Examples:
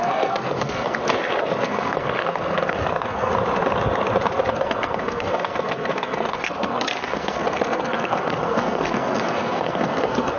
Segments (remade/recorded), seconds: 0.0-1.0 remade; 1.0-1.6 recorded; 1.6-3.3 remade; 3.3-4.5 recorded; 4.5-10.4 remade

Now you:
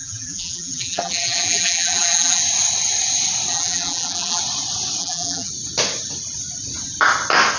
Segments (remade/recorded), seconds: 0.0-2.4 remade; 2.4-3.5 recorded; 3.5-4.4 remade; 4.4-5.0 recorded; 5.0-5.5 remade; 5.5-7.6 recorded

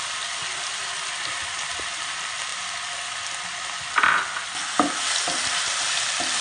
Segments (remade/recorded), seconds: 0.0-6.4 recorded

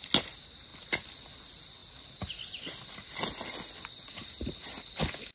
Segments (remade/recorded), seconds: 0.0-5.3 recorded

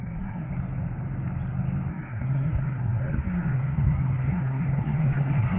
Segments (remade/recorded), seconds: 0.0-0.5 remade; 0.5-1.9 recorded; 1.9-5.6 remade

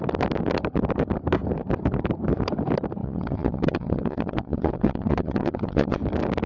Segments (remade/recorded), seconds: 0.0-3.0 recorded; 3.0-6.0 remade; 6.0-6.5 recorded